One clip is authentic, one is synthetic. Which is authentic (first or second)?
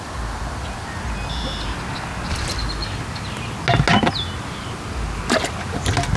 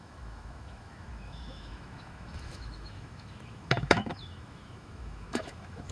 first